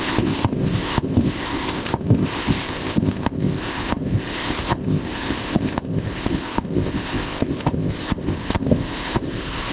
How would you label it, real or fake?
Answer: fake